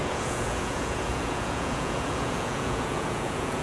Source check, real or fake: fake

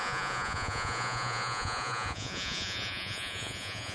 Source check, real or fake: fake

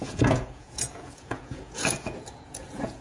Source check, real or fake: fake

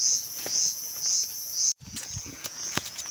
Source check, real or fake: fake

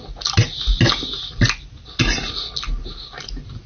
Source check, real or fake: real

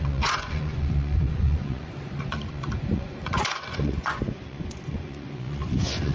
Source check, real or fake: fake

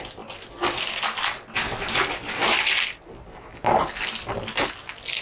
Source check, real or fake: real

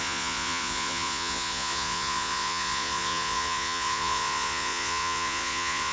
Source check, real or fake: fake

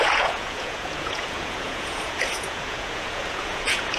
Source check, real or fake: fake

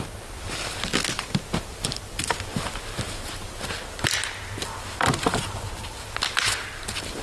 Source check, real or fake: real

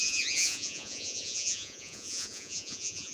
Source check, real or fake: fake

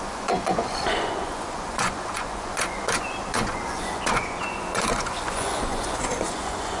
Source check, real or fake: fake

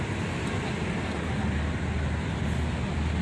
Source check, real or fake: real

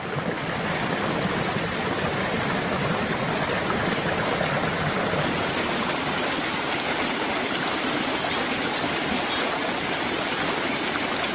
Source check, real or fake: real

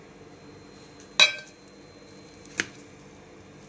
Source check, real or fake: real